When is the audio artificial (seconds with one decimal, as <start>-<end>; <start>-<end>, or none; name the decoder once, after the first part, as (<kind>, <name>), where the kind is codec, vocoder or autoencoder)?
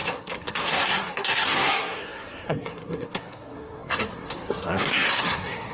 0.0-5.7 (codec, SNAC)